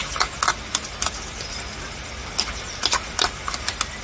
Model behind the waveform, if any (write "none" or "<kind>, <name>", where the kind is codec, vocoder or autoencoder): none